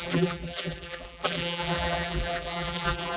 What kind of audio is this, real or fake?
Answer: fake